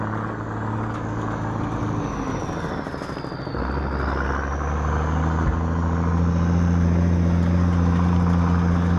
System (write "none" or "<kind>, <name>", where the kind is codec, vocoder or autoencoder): none